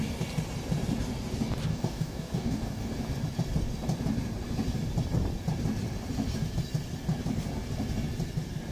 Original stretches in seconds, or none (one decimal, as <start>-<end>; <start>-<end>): 0.0-1.7; 2.9-8.7